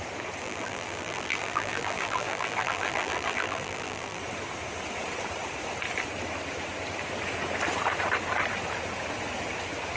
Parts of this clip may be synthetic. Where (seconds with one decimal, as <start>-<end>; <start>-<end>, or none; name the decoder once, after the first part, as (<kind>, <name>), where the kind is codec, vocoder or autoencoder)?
0.4-4.2 (vocoder, BigVGAN v2)